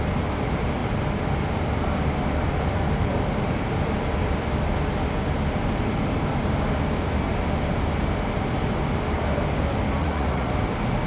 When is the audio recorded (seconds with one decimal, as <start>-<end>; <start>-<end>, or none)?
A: 0.0-10.0; 10.5-11.1